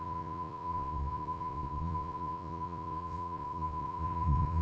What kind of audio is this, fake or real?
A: fake